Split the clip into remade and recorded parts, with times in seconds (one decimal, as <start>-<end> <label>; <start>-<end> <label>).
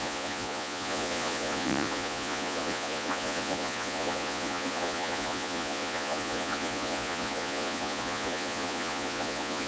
0.0-9.7 remade